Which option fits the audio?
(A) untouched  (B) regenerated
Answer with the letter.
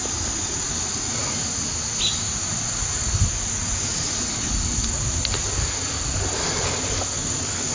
A